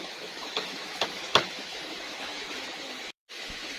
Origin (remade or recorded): remade